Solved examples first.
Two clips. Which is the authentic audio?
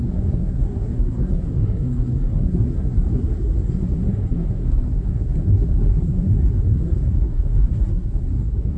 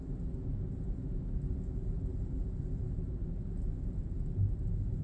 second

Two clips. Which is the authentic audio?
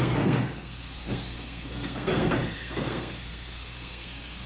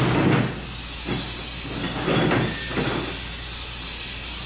second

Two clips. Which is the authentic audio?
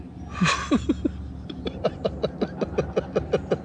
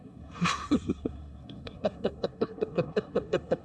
first